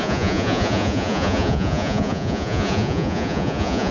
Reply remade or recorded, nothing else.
remade